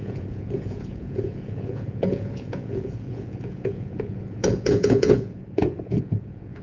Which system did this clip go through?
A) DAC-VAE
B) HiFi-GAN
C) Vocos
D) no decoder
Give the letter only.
C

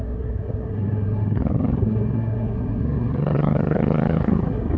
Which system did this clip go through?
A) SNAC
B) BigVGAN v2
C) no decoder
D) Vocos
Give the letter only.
A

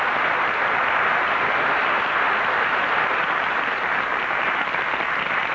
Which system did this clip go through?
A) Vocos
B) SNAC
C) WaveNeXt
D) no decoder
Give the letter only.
D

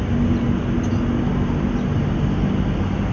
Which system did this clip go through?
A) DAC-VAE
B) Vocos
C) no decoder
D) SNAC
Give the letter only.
C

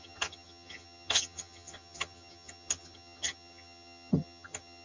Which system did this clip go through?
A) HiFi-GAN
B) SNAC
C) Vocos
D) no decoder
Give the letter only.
A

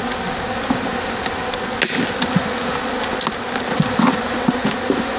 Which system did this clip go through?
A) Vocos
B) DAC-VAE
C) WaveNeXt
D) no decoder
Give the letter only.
D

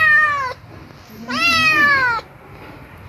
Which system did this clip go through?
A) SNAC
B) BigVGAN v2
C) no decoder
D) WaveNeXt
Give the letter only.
C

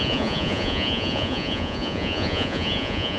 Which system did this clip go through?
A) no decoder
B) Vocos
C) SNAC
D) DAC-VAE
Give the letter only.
B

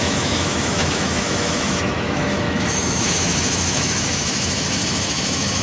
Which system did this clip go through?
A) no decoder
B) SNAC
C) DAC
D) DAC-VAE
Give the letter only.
D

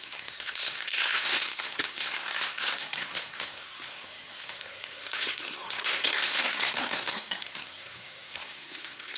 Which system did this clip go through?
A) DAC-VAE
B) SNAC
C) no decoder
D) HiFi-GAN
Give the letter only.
B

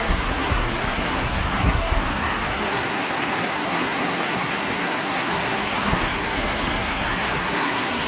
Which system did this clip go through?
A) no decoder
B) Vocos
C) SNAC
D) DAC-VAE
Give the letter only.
C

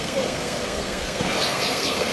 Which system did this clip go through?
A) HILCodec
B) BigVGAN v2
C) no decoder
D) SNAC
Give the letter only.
D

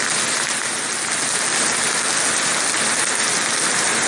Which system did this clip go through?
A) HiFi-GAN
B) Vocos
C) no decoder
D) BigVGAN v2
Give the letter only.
C